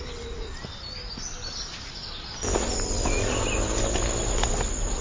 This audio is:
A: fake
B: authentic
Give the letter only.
B